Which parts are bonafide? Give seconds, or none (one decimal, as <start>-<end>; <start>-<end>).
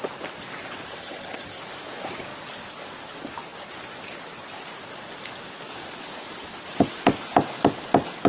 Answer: 0.0-1.0; 1.6-8.3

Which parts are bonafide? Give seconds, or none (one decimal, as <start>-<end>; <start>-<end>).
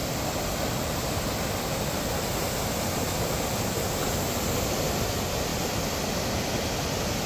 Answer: 3.7-7.3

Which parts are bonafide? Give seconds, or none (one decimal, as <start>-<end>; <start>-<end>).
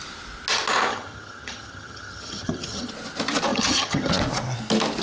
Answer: 0.0-0.9; 2.9-3.5; 4.1-5.0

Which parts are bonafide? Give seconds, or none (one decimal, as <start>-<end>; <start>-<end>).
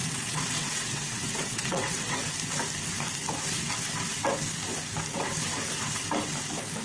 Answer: 2.2-6.8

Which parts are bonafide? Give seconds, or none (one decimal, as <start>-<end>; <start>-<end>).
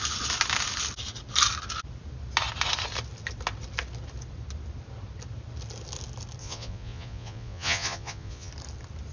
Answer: 0.0-6.4; 8.5-9.1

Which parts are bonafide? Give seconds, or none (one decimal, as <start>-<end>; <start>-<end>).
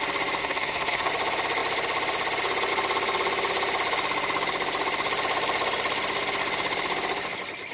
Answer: 0.0-0.4; 1.1-7.7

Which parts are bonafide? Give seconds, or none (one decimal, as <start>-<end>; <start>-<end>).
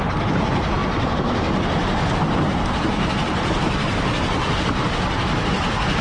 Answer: 0.0-6.0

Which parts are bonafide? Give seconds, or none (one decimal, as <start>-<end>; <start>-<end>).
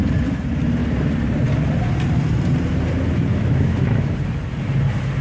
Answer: 0.0-3.3; 4.1-5.2